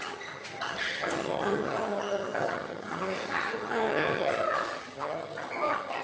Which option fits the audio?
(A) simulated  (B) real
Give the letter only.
A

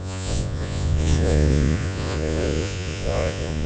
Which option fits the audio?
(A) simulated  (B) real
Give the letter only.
A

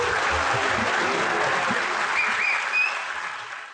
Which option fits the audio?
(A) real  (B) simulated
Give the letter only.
A